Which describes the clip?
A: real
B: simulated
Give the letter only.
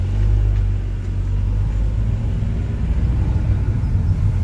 A